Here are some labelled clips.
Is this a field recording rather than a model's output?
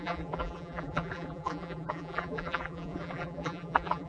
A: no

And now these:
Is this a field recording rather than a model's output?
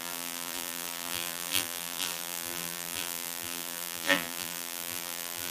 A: no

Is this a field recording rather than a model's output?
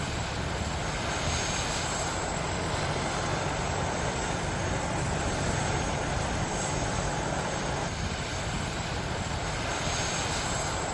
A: yes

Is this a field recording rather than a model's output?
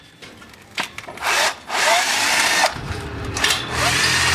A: no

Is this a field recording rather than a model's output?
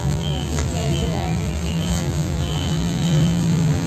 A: no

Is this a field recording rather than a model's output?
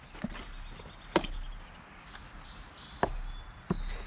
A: yes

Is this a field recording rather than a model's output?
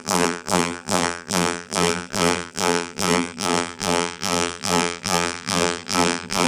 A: no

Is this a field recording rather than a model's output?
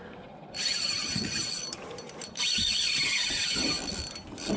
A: no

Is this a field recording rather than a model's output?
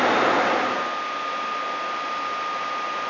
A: yes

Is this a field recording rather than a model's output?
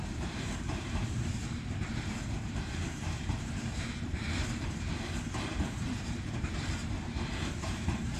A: no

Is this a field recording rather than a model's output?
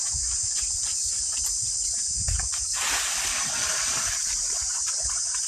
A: no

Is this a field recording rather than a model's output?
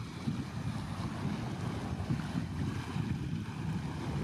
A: yes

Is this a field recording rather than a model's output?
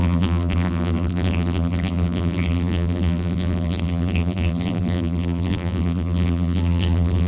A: no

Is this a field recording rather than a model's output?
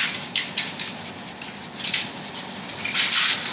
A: yes